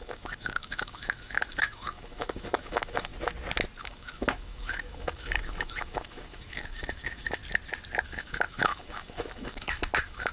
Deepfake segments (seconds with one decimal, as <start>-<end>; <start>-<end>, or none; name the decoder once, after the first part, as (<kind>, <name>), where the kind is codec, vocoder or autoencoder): 0.0-3.1 (autoencoder, DAC-VAE); 3.8-7.4; 8.0-10.3